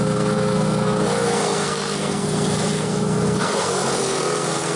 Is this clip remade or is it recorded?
remade